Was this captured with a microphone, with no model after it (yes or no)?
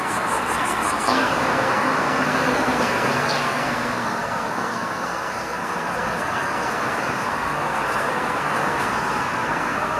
no